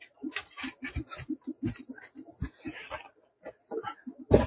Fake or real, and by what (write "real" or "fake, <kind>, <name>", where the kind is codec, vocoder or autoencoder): real